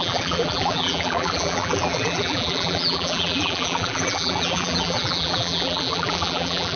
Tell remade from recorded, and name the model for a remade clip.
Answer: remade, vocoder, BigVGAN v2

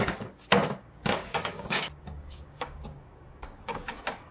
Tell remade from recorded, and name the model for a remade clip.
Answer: remade, codec, DAC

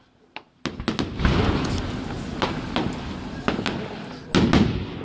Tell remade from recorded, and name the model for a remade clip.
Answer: recorded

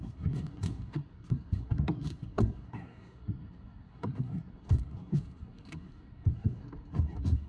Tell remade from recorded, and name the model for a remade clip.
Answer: remade, codec, SNAC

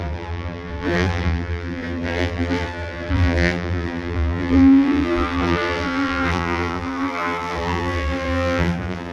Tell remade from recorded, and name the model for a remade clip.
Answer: remade, vocoder, BigVGAN v2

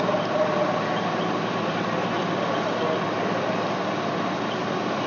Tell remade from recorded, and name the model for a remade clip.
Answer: recorded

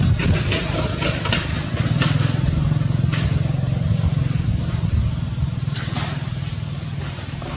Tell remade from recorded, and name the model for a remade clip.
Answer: recorded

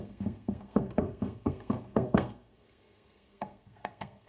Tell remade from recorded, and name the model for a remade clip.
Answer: remade, codec, SNAC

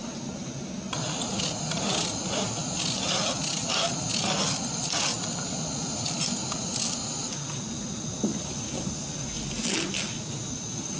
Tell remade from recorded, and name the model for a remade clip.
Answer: recorded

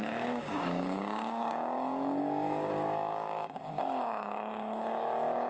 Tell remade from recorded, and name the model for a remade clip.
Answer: remade, codec, DAC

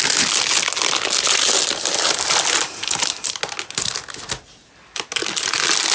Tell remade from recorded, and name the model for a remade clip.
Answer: recorded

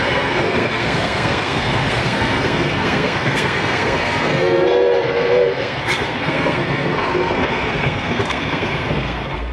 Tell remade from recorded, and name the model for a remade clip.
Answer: remade, codec, SNAC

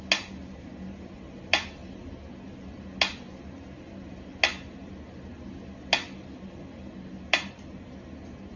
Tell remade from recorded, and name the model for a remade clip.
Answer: recorded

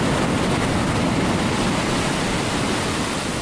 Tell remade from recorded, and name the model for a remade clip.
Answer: recorded